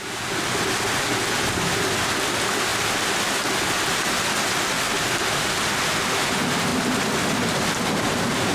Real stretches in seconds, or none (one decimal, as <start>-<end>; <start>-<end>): 0.0-8.5